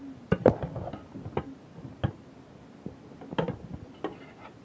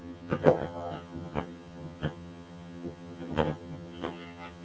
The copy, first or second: second